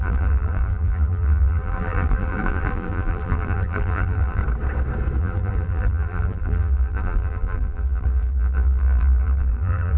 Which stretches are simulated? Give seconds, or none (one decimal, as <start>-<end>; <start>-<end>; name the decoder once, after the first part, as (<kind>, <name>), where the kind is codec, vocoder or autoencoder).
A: 0.0-4.4 (vocoder, BigVGAN v2); 5.2-10.0